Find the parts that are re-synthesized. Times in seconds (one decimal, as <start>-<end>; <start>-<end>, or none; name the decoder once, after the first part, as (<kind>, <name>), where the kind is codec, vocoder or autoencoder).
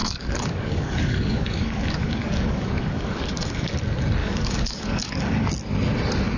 0.0-3.8 (codec, DAC); 4.2-5.5